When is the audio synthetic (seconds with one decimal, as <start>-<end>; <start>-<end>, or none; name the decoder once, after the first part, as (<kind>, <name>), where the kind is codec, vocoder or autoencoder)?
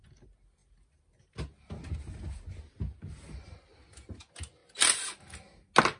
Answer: none